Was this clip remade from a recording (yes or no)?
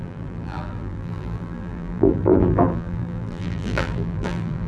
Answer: yes